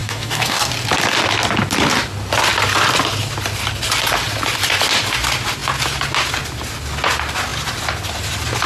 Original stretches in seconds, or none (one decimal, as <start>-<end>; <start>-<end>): 0.7-8.7